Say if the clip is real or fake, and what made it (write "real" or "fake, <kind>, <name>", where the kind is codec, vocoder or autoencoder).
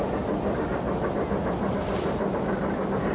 real